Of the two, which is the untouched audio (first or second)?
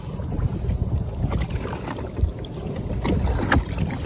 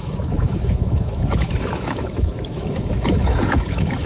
first